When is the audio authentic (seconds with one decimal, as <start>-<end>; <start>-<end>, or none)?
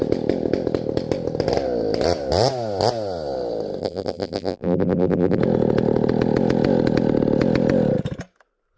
0.0-3.8; 5.4-8.8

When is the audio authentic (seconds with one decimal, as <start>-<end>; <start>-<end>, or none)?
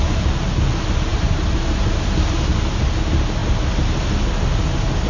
0.0-5.1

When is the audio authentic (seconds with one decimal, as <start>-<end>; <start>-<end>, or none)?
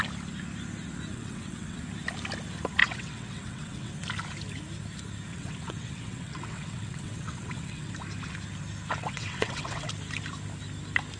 0.0-1.1; 1.8-2.8; 3.9-5.3; 7.9-9.0; 9.9-11.2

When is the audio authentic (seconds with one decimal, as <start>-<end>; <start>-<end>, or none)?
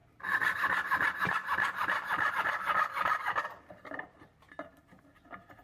0.0-5.6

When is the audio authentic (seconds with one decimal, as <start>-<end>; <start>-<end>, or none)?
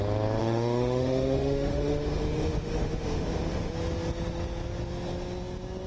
0.0-0.4; 3.7-5.9